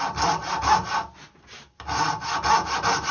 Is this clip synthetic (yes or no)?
no